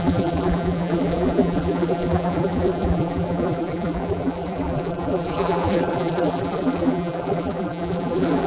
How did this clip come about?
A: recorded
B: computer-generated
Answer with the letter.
B